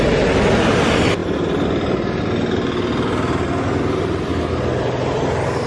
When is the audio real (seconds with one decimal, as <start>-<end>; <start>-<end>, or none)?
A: 0.0-5.7